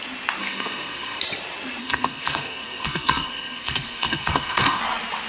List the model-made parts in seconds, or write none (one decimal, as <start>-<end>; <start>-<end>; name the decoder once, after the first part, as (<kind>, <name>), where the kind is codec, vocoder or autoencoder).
0.4-1.2 (codec, SNAC); 1.8-4.8